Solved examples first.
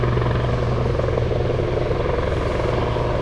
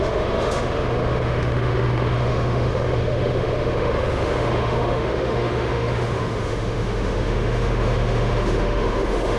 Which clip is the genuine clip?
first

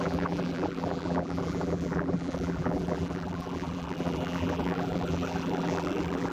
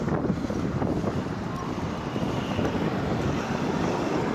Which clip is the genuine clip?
second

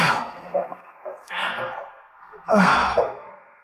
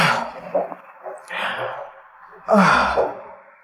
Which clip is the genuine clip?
second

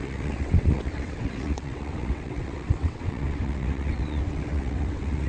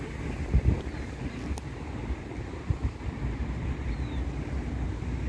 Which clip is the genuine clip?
second